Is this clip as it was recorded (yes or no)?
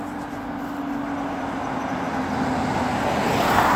yes